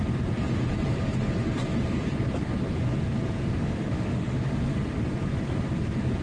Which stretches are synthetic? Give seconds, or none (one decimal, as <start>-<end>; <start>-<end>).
3.4-4.5